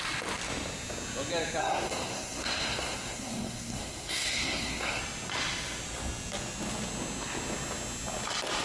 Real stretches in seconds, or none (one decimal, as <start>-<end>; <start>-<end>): 0.0-1.6; 5.0-8.6